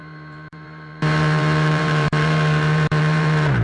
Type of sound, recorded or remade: remade